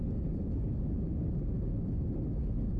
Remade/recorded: recorded